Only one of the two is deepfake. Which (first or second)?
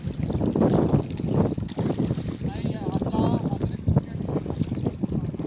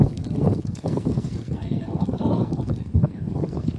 second